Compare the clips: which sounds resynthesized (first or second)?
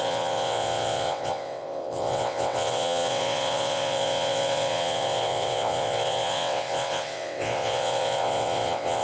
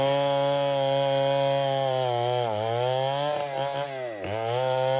first